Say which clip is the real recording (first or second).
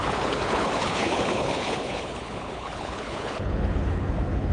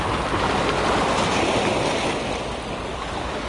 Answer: second